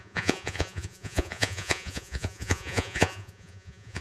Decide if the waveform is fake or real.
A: fake